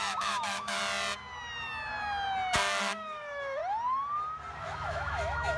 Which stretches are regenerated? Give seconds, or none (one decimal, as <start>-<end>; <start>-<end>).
0.0-0.8; 2.8-3.6; 4.6-5.6